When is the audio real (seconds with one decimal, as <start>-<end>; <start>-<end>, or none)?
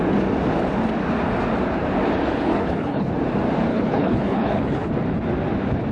0.0-2.5; 3.1-3.7; 4.9-5.9